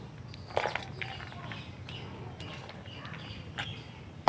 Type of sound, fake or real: real